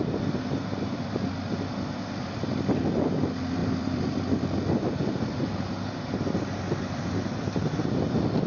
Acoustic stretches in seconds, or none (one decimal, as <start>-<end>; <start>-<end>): 0.0-3.6; 4.2-8.5